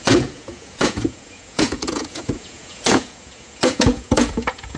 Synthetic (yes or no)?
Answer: yes